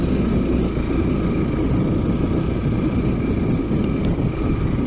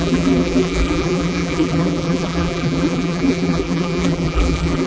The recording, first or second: first